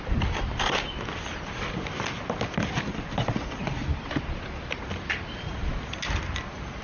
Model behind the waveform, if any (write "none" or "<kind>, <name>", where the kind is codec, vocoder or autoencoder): none